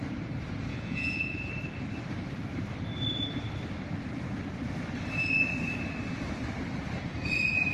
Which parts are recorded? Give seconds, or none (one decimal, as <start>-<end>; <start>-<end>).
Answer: 0.0-0.7; 1.5-7.7